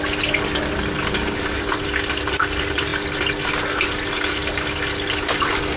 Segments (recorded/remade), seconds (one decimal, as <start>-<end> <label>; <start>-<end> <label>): 0.0-5.8 recorded